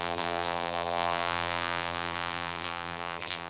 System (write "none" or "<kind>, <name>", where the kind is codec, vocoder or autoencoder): vocoder, BigVGAN v2